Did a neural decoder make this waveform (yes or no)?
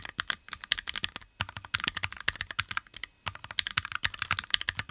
no